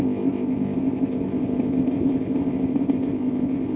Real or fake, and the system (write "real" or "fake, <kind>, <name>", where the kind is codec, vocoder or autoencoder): fake, codec, ZipCodec